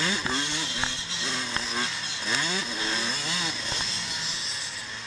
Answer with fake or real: real